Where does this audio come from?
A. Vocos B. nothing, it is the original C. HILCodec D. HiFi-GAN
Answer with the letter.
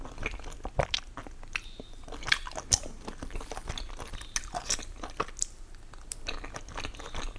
B